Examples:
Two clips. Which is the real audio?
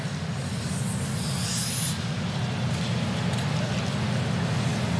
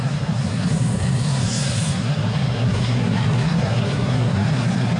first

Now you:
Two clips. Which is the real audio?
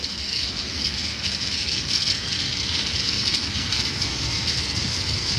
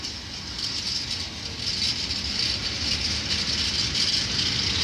second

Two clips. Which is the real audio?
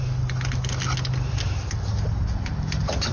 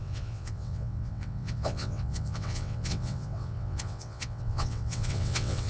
first